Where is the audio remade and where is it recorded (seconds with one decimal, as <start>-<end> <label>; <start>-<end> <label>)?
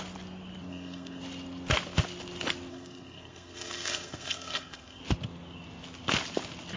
0.0-0.7 recorded; 0.7-1.2 remade; 1.2-2.7 recorded; 2.7-5.0 remade; 5.0-6.8 recorded